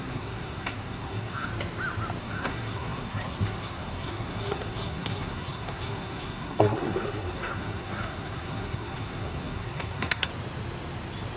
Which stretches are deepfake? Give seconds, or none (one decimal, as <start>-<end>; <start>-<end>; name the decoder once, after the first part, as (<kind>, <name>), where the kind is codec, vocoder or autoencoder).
0.0-1.5 (codec, SNAC); 2.2-10.3